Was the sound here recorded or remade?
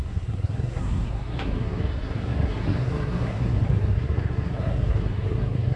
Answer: remade